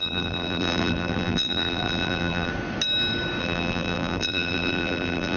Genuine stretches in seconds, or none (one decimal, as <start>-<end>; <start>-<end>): 2.5-3.4

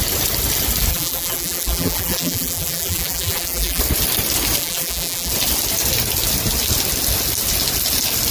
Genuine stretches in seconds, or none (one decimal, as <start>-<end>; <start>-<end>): 0.0-0.9; 3.8-4.6; 5.3-8.3

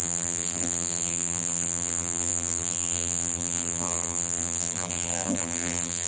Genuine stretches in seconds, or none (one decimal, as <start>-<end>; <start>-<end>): none

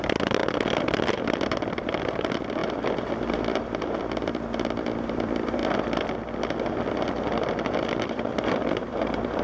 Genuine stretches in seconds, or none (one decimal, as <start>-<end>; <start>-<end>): 0.4-1.1; 5.6-7.6

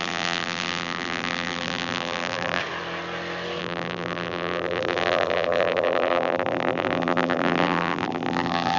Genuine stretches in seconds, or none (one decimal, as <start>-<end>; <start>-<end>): 2.6-3.6